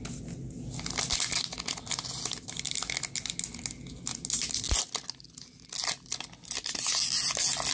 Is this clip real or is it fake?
real